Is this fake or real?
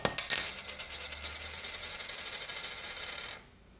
real